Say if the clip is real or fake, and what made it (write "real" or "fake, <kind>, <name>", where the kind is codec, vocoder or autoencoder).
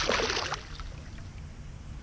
real